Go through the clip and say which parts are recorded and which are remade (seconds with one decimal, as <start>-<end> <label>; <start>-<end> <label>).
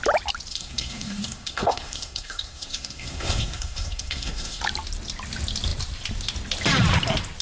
0.0-0.5 recorded; 0.5-4.6 remade; 4.6-7.4 recorded